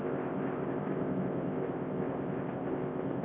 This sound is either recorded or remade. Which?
remade